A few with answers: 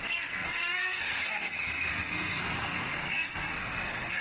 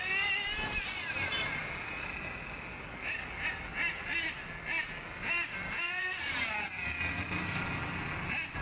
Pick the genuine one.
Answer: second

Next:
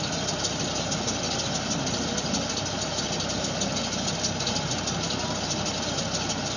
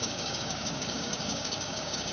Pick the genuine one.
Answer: first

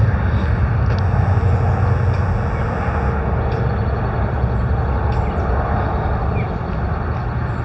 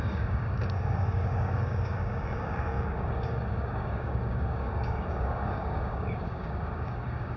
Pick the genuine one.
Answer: first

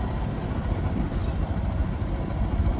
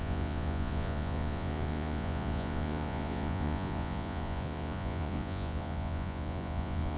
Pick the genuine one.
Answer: first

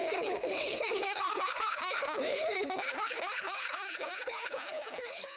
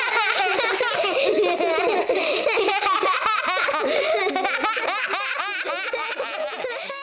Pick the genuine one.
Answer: second